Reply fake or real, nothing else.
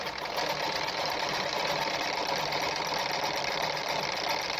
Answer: real